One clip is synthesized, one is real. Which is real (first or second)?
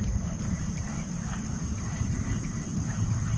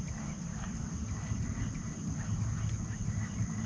second